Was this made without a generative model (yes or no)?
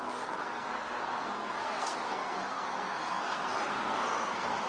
no